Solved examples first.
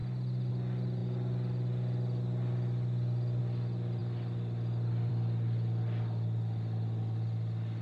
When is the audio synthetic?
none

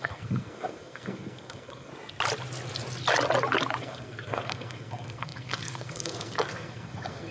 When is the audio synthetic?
0.0-1.9 (codec, SNAC); 3.8-7.3

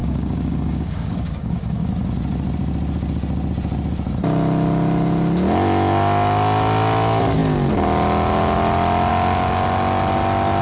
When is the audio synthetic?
0.0-1.9 (codec, DAC)

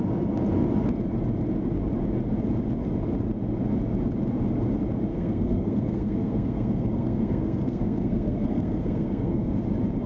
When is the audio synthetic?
5.1-9.6 (codec, SNAC)

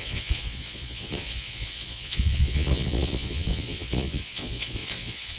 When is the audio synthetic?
0.0-5.4 (vocoder, Vocos)